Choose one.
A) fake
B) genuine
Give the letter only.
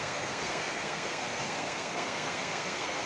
A